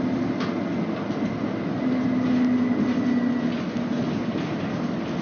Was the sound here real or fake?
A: real